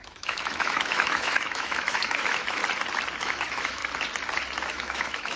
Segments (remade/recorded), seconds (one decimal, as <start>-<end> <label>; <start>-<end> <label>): 0.0-2.6 remade; 2.6-3.2 recorded; 3.2-3.8 remade; 3.8-4.7 recorded; 4.7-5.4 remade